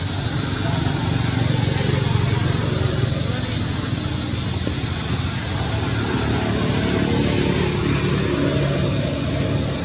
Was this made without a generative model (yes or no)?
yes